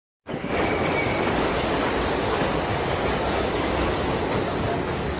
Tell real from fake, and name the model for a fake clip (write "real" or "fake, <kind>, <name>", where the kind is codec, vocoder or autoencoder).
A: fake, codec, DAC